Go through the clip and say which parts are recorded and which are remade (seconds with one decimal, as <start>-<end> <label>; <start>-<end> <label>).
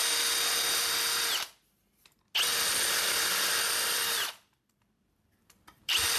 0.0-2.5 recorded; 2.5-6.2 remade